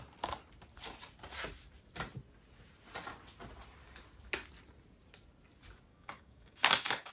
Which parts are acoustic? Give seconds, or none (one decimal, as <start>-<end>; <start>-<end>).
0.0-5.9